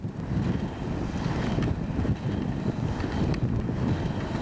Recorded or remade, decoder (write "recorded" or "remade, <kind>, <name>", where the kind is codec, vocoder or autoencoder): recorded